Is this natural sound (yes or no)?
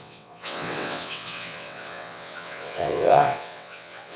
no